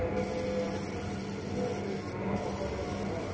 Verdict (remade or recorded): recorded